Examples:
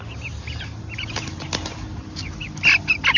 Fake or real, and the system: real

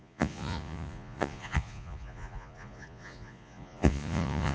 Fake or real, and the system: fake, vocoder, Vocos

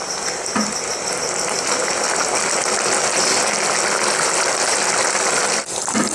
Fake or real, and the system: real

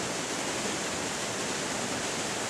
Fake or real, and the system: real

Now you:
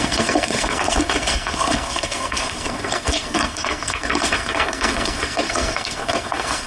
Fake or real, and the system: fake, codec, SNAC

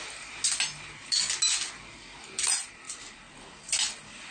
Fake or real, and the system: real